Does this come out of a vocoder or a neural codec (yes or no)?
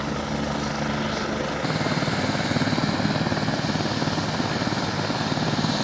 no